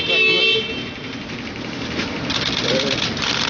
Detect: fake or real fake